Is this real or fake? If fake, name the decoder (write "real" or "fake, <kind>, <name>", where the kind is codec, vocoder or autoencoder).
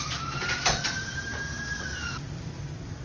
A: fake, vocoder, BigVGAN v2